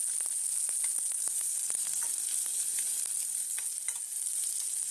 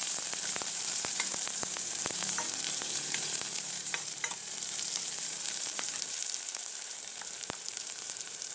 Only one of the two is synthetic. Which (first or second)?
second